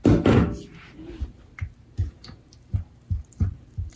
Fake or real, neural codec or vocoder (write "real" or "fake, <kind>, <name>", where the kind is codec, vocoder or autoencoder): real